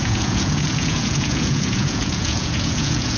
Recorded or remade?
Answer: remade